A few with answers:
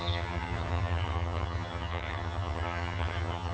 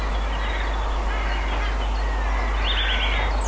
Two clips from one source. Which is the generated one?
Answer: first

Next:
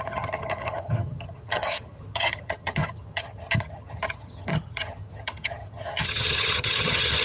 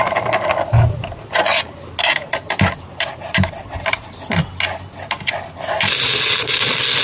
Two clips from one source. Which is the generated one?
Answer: first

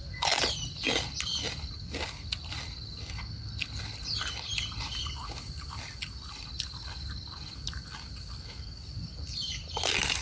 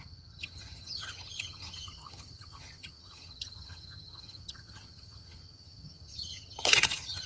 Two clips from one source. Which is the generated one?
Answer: second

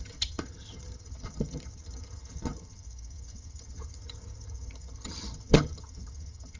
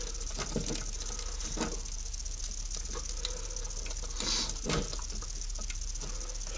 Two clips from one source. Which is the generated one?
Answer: first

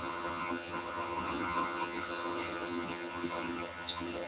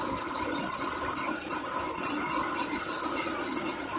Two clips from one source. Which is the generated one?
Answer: first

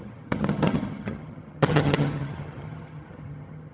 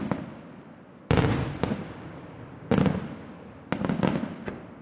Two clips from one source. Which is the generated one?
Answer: first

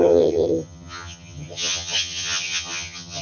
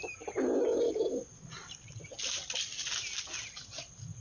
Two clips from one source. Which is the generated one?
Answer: first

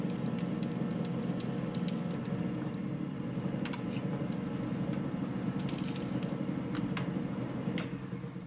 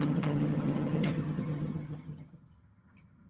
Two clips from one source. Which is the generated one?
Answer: second